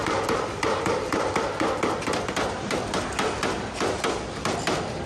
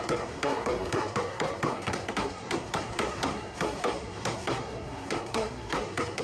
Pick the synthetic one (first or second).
second